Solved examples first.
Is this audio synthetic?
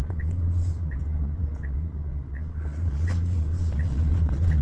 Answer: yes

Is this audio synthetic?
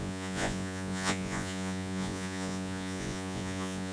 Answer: yes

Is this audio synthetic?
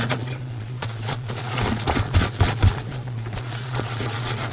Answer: yes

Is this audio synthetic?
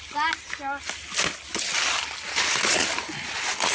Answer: no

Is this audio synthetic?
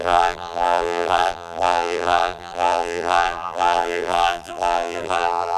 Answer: yes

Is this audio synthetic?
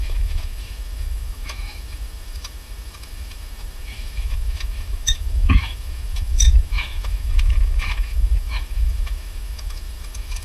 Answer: yes